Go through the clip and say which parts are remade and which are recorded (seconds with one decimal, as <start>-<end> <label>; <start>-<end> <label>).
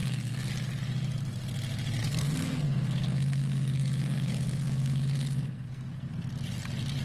0.0-0.5 remade; 0.5-2.0 recorded; 2.0-6.1 remade; 6.1-7.0 recorded